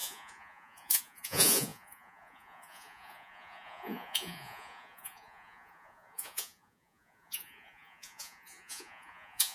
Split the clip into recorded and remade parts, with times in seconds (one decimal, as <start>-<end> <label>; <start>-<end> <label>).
0.0-9.5 remade